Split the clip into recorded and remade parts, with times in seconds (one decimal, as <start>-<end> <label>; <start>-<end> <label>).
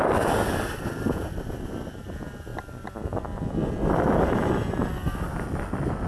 0.0-6.1 recorded